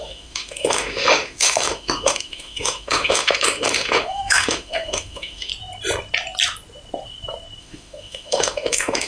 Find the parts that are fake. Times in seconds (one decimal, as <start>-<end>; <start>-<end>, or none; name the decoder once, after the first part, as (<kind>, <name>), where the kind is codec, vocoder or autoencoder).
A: 0.0-5.5 (autoencoder, DAC-VAE); 7.6-9.1